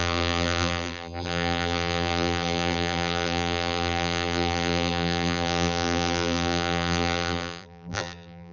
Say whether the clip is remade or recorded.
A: remade